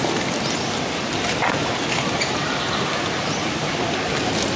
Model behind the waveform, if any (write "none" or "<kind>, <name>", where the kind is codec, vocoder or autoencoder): none